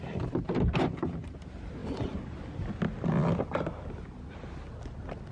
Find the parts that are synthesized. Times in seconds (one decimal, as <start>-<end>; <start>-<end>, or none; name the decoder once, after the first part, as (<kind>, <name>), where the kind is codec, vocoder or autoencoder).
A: none